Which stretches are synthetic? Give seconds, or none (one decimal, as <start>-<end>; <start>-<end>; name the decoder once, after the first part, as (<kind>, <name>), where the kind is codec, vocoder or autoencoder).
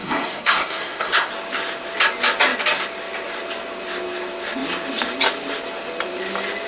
0.0-1.3 (codec, SNAC)